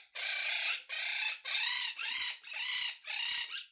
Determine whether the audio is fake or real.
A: real